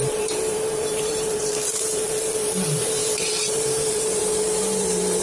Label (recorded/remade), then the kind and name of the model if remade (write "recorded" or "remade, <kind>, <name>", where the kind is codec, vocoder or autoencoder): remade, vocoder, BigVGAN v2